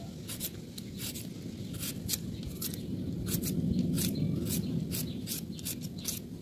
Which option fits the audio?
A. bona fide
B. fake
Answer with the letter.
A